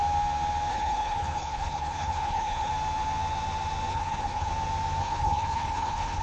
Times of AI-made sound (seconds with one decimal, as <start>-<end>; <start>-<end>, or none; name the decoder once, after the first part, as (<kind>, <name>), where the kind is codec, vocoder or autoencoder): 0.7-2.7 (codec, HILCodec); 3.9-4.5; 5.0-6.2